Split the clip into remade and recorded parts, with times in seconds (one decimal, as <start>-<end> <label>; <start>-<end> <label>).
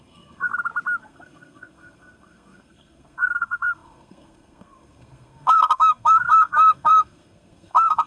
0.0-0.5 remade; 0.5-1.0 recorded; 1.0-8.1 remade